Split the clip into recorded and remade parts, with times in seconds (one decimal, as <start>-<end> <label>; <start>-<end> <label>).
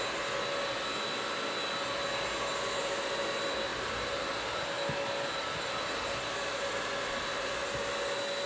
0.0-3.7 recorded; 3.7-7.5 remade; 7.5-8.5 recorded